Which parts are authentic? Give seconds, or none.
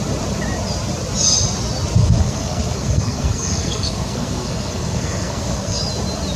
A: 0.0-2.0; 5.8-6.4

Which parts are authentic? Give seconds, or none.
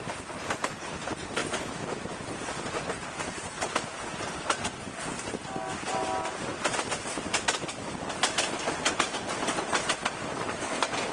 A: 0.0-11.1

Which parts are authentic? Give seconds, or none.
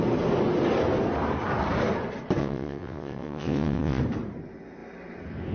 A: 0.0-2.4; 4.0-5.5